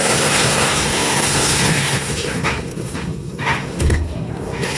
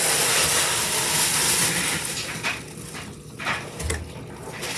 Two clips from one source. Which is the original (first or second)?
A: second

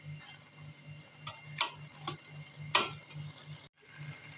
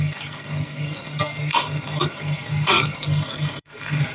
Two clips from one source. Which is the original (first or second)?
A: first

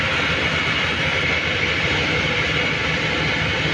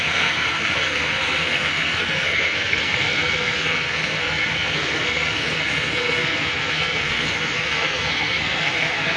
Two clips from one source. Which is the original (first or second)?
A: first